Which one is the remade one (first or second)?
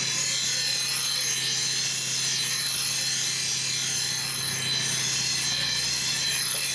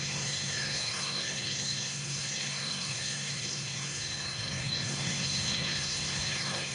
second